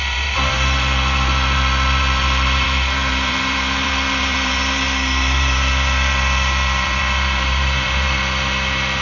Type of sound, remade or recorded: remade